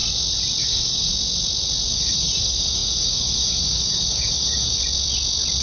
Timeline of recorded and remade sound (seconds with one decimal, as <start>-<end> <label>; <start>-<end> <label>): 0.0-0.6 recorded; 0.6-1.1 remade; 1.1-1.9 recorded; 1.9-4.8 remade; 4.8-5.6 recorded